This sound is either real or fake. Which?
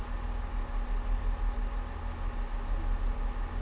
real